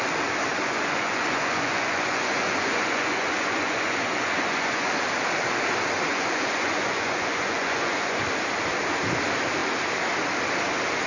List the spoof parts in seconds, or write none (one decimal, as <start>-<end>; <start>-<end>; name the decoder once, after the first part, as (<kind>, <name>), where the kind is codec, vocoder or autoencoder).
0.5-4.9 (vocoder, Vocos); 6.1-8.2